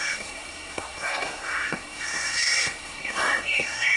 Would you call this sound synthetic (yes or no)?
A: yes